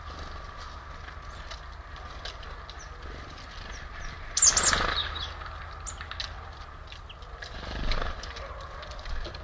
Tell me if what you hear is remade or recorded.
recorded